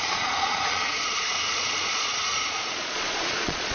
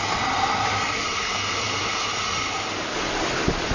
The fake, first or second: first